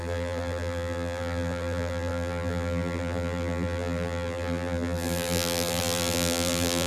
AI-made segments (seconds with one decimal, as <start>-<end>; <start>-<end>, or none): 0.0-6.9